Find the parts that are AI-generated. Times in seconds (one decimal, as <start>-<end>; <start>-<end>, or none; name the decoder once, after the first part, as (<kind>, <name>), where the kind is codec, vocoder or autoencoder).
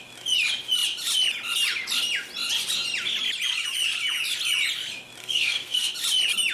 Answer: 5.2-5.9 (codec, SNAC)